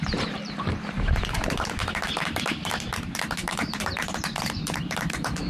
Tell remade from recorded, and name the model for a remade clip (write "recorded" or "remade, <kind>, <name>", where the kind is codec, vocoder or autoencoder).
remade, vocoder, BigVGAN v2